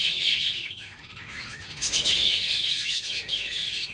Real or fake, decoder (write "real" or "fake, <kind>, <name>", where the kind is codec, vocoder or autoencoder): fake, autoencoder, DAC-VAE